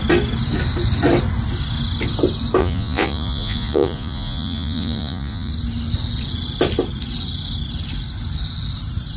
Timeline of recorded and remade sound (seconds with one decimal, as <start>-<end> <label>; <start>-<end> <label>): 0.0-2.6 recorded; 2.6-5.5 remade; 5.5-9.2 recorded